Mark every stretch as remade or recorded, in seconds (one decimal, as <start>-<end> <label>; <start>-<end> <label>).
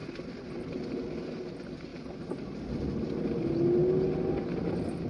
0.0-5.1 recorded